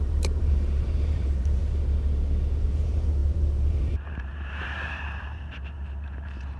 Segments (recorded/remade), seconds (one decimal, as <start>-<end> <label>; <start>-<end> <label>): 0.0-1.6 remade; 1.6-2.6 recorded; 2.6-6.6 remade